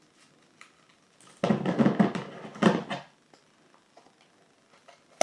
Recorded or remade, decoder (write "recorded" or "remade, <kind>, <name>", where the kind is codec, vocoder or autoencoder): recorded